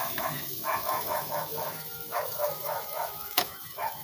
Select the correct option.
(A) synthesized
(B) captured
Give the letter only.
A